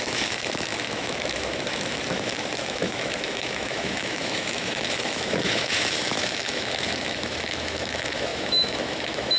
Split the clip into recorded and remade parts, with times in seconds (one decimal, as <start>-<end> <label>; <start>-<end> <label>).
0.0-9.4 remade